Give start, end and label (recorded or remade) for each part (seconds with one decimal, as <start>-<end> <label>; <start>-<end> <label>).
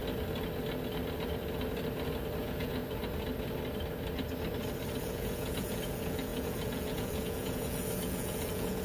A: 0.0-2.4 recorded; 2.4-2.8 remade; 2.8-5.0 recorded; 5.0-8.8 remade